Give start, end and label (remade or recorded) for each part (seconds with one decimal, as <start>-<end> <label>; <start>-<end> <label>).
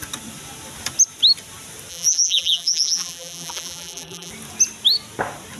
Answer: 0.0-1.9 recorded; 1.9-4.3 remade; 4.3-5.6 recorded